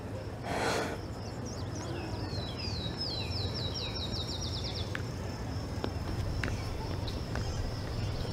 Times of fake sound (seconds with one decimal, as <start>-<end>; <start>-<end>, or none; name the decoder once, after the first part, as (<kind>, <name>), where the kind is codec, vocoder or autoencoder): 0.0-8.3 (vocoder, BigVGAN v2)